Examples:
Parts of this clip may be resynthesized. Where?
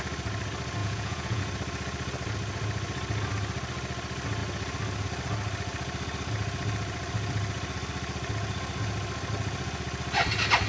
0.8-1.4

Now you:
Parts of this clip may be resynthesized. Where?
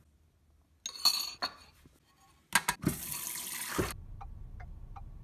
none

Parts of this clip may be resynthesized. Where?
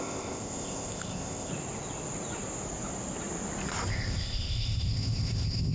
0.0-1.5; 3.9-5.7